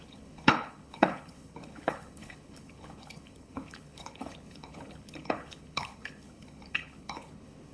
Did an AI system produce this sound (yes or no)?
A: yes